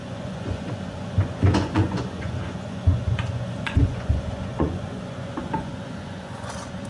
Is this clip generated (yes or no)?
yes